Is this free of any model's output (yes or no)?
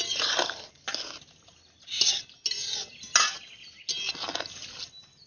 yes